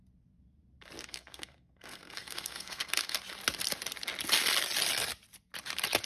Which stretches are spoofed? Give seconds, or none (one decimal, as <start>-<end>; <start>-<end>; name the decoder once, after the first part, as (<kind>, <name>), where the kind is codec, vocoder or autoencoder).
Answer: 1.0-3.2 (codec, SNAC)